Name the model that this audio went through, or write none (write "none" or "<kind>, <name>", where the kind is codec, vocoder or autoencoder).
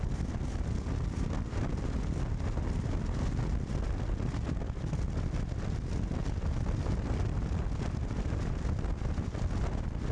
none